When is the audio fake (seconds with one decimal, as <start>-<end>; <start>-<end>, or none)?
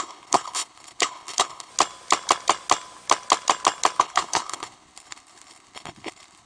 0.0-1.7; 4.0-6.5